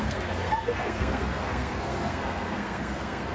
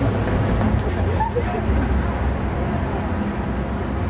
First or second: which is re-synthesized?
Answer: first